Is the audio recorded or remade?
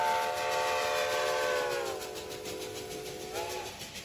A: recorded